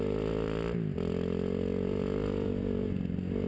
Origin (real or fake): real